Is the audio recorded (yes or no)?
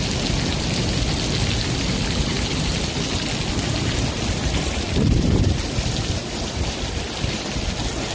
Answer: yes